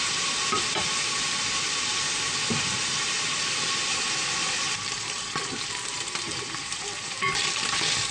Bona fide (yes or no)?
no